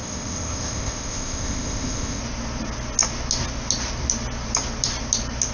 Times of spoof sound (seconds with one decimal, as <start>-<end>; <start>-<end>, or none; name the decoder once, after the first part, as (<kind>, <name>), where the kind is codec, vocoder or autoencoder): 0.0-2.2 (codec, ZipCodec)